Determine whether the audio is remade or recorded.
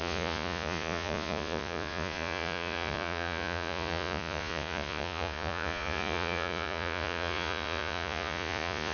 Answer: remade